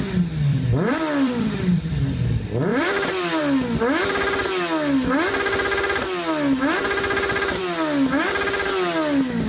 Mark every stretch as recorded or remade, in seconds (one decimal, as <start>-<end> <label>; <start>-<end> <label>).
0.0-0.5 recorded; 0.5-2.0 remade; 2.0-2.7 recorded; 2.7-3.4 remade; 3.4-9.5 recorded